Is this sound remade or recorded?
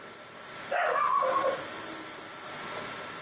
recorded